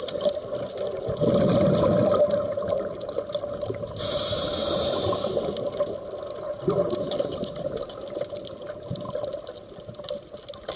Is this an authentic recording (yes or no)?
yes